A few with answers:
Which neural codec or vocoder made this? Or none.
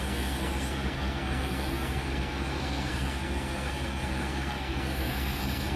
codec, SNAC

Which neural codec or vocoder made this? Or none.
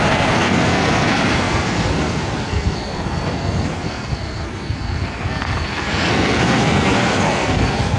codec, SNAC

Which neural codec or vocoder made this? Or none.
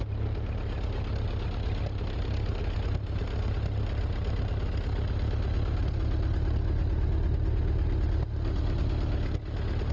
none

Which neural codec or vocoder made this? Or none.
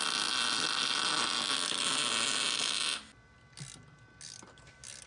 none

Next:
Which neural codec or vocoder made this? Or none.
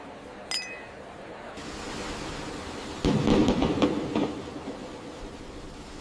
none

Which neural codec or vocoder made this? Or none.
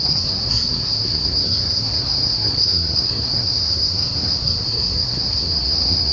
codec, SNAC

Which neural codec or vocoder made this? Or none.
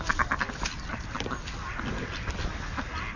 none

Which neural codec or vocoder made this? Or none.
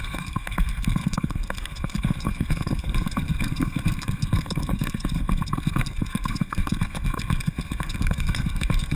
codec, SNAC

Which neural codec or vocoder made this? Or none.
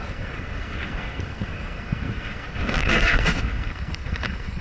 codec, SNAC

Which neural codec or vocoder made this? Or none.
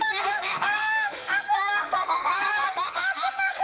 codec, SNAC